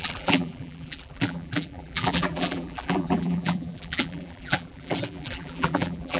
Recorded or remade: remade